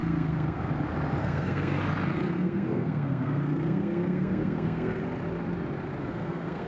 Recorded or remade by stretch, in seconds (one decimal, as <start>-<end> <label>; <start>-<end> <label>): 0.0-0.7 remade; 0.7-1.2 recorded; 1.2-1.8 remade; 1.8-2.2 recorded; 2.2-5.0 remade; 5.0-6.0 recorded; 6.0-6.7 remade